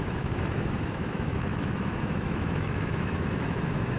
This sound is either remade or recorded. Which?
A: remade